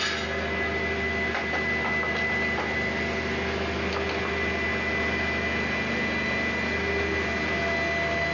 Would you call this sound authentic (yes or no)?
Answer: yes